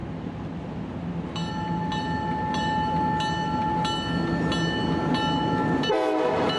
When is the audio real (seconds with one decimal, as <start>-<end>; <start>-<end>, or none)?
0.0-5.6